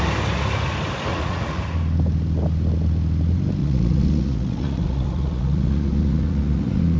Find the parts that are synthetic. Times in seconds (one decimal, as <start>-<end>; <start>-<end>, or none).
1.1-1.6; 3.6-7.0